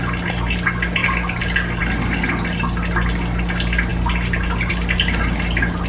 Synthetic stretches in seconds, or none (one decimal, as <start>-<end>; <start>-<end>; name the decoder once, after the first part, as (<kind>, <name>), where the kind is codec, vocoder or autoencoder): none